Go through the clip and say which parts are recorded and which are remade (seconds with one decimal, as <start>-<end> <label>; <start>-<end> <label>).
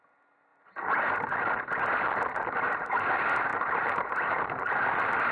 0.0-0.5 recorded; 0.5-1.0 remade; 1.0-3.5 recorded; 3.5-4.8 remade; 4.8-5.3 recorded